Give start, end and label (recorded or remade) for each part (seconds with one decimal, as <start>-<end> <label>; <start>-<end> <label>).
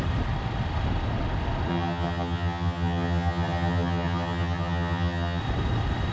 0.0-1.7 recorded; 1.7-5.4 remade; 5.4-6.1 recorded